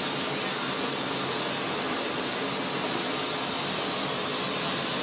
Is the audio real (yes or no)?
yes